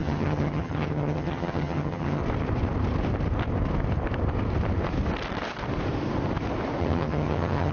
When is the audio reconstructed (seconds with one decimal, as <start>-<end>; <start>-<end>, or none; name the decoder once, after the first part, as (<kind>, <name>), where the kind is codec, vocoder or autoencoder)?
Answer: 0.0-2.2 (vocoder, HiFi-GAN); 6.8-7.7